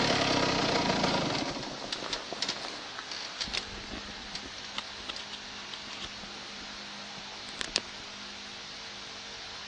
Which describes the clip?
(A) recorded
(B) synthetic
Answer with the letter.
A